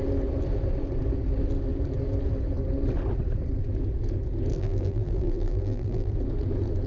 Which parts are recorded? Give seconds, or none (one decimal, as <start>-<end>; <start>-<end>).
0.0-4.5; 6.1-6.9

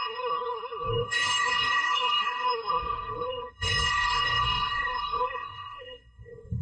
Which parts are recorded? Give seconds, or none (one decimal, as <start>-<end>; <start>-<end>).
none

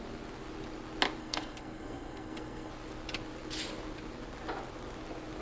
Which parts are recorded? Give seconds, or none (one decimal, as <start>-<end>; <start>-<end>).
0.0-1.2; 2.7-5.4

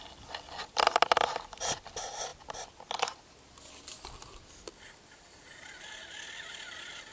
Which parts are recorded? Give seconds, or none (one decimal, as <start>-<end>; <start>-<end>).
0.0-7.1